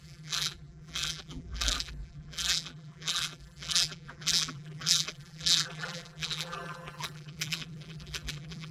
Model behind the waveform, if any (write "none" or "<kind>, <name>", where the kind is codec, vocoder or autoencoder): vocoder, BigVGAN v2